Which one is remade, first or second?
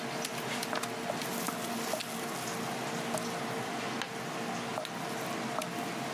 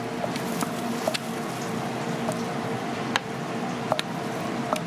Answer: second